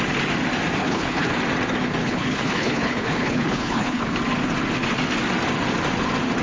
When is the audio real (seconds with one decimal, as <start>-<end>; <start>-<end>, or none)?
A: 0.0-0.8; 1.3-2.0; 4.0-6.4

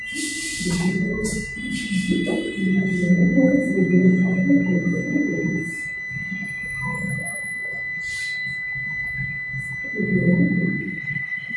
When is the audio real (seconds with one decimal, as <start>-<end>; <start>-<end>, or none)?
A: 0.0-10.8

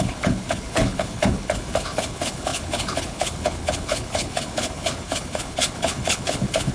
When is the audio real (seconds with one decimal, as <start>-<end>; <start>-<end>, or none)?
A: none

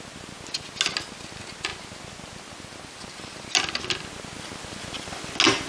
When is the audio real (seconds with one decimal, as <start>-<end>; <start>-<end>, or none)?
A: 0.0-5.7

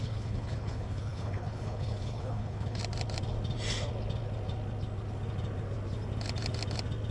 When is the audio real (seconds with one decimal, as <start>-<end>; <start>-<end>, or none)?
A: 2.8-7.1

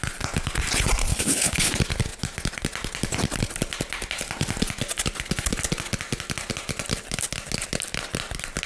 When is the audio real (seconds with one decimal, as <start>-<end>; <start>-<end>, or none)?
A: 0.0-1.0; 1.7-8.7